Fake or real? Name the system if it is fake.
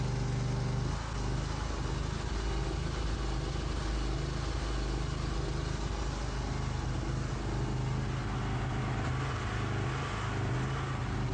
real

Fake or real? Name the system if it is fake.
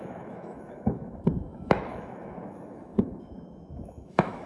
fake, autoencoder, DAC-VAE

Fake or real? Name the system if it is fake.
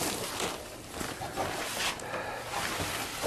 real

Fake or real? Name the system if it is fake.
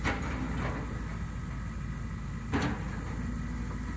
real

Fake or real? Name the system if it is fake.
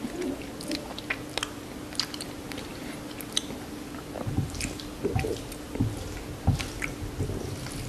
real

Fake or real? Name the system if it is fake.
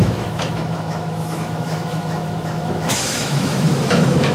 fake, autoencoder, DAC-VAE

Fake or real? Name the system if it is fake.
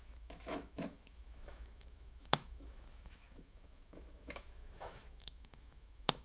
fake, autoencoder, DAC-VAE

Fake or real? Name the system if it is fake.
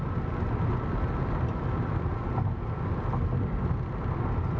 real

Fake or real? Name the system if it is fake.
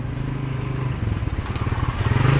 real